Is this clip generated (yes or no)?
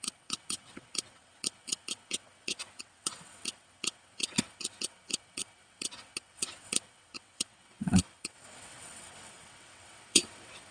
yes